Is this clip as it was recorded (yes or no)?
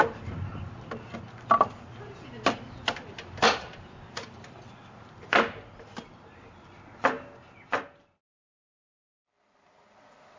yes